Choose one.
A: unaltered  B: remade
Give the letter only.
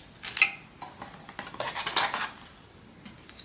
A